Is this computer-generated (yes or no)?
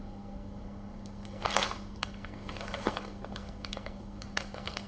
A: yes